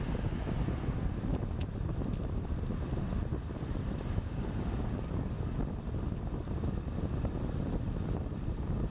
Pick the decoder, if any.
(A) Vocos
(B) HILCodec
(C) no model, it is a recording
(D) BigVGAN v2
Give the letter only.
C